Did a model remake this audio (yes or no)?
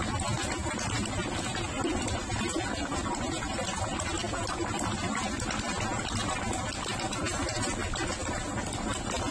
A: no